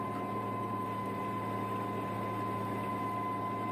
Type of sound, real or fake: real